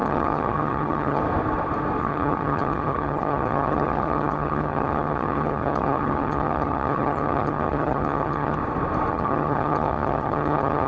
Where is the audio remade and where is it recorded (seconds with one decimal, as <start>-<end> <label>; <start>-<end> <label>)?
0.0-1.2 remade; 1.2-2.0 recorded; 2.0-8.6 remade; 8.6-9.1 recorded; 9.1-10.9 remade